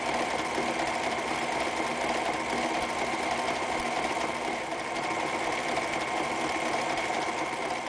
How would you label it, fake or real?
real